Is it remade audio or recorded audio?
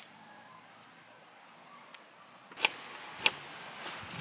recorded